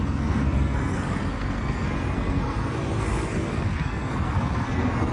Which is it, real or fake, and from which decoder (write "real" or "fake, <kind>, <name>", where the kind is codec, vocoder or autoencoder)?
fake, codec, SNAC